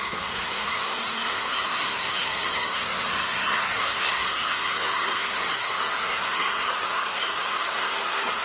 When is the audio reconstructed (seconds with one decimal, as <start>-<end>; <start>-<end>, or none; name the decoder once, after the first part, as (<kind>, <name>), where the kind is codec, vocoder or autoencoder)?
0.0-8.4 (codec, SNAC)